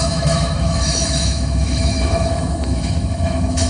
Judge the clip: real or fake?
fake